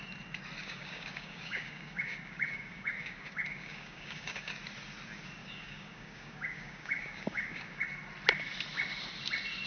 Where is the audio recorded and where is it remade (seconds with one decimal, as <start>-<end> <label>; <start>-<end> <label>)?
0.0-0.6 recorded; 0.6-4.5 remade; 4.5-5.4 recorded; 5.4-7.8 remade; 7.8-9.7 recorded